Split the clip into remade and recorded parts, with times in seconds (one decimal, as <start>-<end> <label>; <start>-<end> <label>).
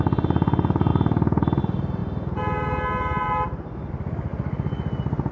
0.0-5.3 recorded